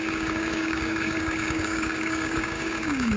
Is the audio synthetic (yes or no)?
yes